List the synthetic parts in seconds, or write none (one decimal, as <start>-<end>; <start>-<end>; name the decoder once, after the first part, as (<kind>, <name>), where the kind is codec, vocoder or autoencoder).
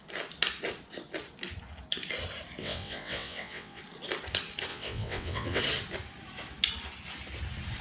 2.6-3.8 (vocoder, WaveNeXt); 4.7-5.6